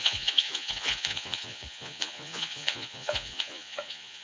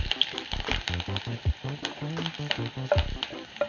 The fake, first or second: first